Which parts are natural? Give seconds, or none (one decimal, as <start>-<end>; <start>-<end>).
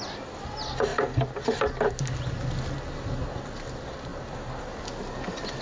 0.0-5.6